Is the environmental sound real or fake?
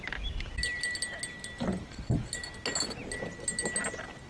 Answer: real